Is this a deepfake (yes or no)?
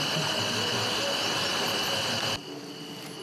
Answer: no